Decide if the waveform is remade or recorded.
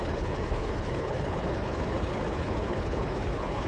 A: remade